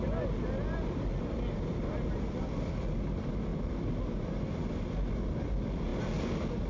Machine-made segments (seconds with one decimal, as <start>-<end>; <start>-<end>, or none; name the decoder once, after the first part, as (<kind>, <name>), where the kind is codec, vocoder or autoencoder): none